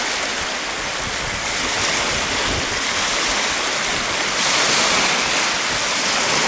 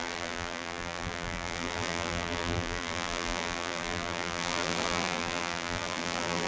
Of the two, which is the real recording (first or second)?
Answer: first